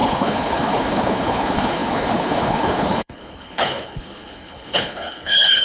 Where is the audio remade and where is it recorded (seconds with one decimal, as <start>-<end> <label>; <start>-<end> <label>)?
0.0-5.6 remade

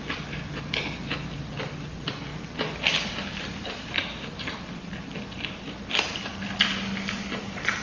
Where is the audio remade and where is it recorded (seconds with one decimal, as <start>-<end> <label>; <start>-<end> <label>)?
0.0-7.8 recorded

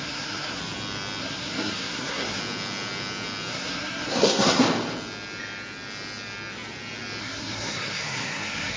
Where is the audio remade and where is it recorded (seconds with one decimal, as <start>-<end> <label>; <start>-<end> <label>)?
0.0-0.6 remade; 0.6-1.2 recorded; 1.2-2.4 remade; 2.4-3.5 recorded; 3.5-4.6 remade; 4.6-7.2 recorded; 7.2-8.8 remade